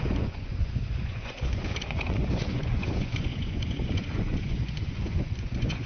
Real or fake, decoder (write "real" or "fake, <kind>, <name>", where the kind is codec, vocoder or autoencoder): fake, vocoder, Vocos